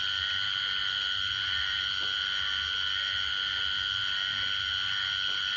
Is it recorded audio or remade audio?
recorded